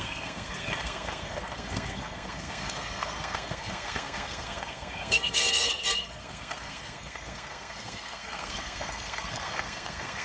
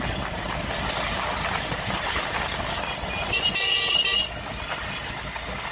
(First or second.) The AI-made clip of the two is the first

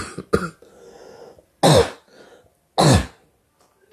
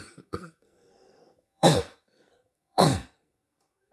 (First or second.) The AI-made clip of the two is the second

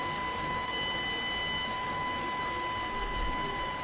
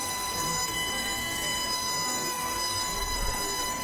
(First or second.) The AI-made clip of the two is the second